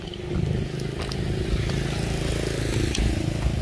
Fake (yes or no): no